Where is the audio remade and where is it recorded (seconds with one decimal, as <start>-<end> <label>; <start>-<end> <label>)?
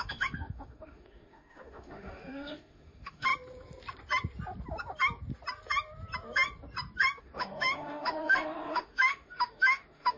0.0-3.3 remade; 3.3-7.2 recorded; 7.2-10.2 remade